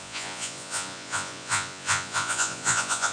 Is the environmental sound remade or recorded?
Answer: remade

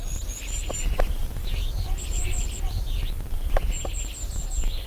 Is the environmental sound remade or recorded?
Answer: recorded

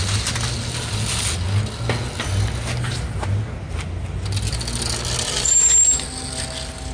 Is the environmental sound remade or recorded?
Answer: recorded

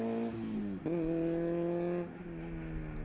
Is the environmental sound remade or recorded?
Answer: recorded